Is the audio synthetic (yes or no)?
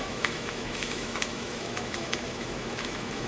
yes